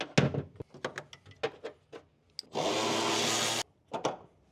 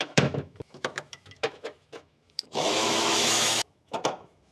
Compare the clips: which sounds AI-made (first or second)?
second